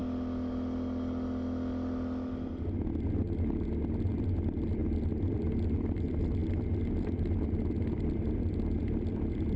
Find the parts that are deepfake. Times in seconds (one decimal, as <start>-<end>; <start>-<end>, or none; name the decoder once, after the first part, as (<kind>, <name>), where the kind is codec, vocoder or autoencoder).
4.1-4.8 (vocoder, BigVGAN v2); 5.3-9.6